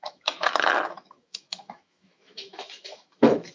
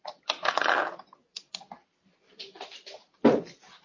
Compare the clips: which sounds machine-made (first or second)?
first